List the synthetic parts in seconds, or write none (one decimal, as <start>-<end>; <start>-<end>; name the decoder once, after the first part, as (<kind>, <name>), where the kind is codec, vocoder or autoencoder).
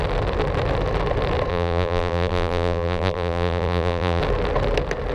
1.5-4.2 (vocoder, BigVGAN v2)